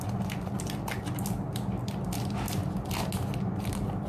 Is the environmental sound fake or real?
real